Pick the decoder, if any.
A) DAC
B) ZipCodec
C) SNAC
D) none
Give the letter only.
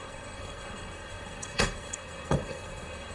C